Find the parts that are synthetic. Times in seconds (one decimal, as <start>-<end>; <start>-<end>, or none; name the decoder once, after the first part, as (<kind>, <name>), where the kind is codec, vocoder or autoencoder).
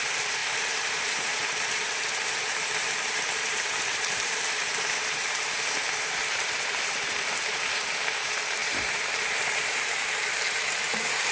0.0-11.3 (vocoder, BigVGAN v2)